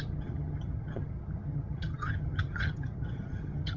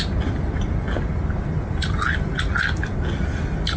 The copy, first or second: first